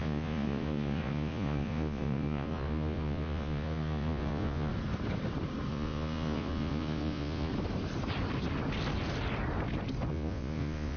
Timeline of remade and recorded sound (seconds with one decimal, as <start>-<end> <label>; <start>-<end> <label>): 0.0-4.7 remade; 4.7-5.7 recorded; 5.7-7.5 remade; 7.5-10.1 recorded; 10.1-11.0 remade